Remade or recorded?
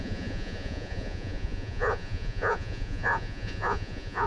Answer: remade